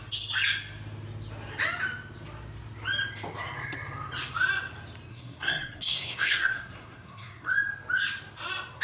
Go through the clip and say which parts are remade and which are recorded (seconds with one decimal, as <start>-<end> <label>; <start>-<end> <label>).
0.0-5.1 recorded; 5.1-7.5 remade; 7.5-8.8 recorded